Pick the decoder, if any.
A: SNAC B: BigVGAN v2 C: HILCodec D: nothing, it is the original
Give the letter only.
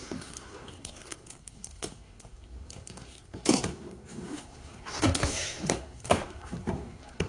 A